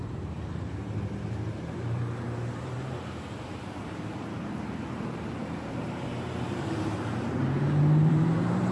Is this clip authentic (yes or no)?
no